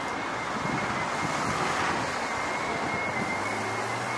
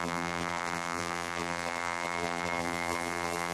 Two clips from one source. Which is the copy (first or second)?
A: second